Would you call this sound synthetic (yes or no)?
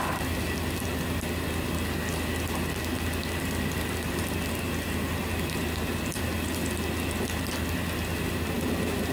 no